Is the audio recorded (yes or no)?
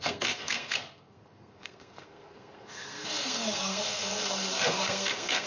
no